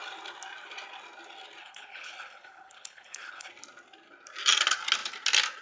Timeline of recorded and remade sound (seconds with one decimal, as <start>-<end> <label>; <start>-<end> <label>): 0.0-1.6 recorded; 1.6-3.5 remade; 3.5-5.6 recorded